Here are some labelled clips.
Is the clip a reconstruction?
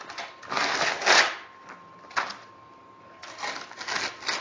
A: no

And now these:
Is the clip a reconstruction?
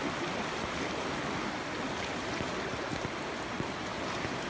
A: no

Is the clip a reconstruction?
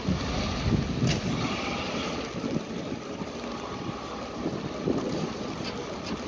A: no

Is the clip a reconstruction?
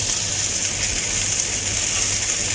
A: no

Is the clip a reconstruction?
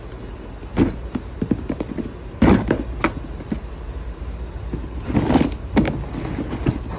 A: no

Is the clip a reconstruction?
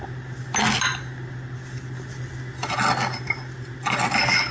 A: no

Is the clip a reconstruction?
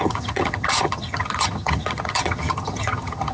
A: yes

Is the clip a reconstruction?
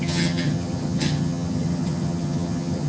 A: yes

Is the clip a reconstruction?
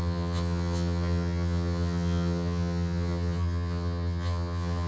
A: yes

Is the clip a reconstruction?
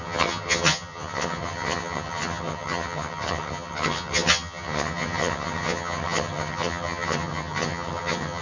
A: yes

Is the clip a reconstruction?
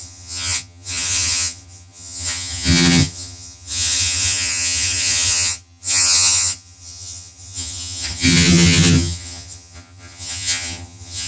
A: yes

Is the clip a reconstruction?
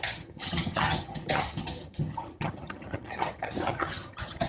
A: yes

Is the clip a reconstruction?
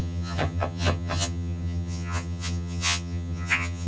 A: yes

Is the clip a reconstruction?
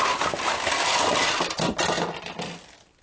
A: no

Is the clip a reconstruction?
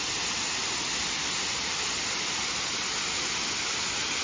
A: no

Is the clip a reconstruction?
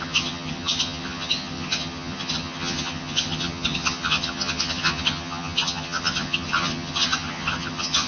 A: yes